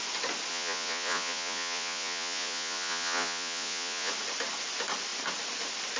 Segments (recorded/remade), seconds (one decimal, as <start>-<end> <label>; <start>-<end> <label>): 0.0-0.5 recorded; 0.5-4.1 remade; 4.1-6.0 recorded